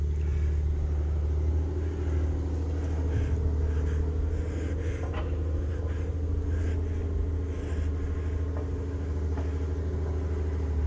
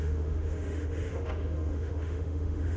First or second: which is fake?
second